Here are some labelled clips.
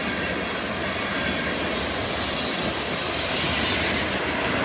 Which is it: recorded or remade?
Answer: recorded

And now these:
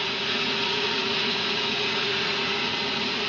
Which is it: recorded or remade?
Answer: remade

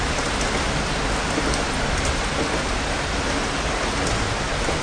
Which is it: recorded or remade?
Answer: recorded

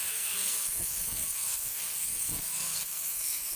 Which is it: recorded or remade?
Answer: remade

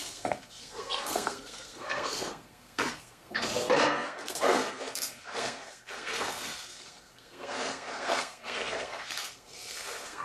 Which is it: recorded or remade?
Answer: remade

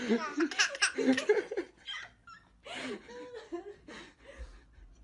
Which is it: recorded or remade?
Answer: recorded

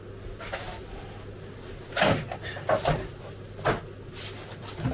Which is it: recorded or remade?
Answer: recorded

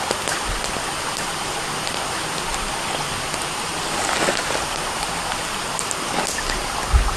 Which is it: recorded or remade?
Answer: recorded